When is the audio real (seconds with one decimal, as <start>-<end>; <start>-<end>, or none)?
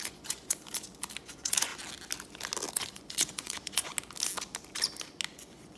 0.6-1.2; 1.7-2.7; 3.9-5.3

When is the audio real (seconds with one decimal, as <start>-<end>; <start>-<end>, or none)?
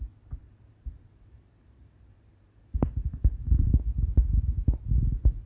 0.0-0.4; 3.7-5.5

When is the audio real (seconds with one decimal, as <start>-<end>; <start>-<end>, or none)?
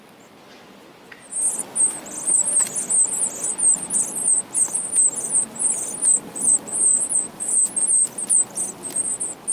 0.0-6.9; 7.7-9.5